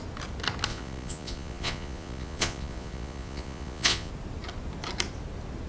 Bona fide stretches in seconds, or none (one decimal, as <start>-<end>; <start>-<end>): 0.0-0.7; 4.1-5.7